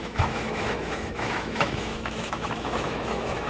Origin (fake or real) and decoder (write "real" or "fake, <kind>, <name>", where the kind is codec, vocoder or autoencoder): fake, autoencoder, DAC-VAE